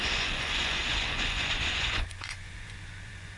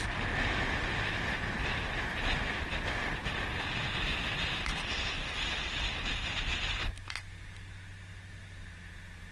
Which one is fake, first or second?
first